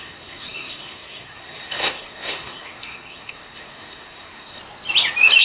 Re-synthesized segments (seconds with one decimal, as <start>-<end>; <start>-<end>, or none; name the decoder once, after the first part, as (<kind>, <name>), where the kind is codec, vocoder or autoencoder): 0.0-4.6 (codec, SNAC)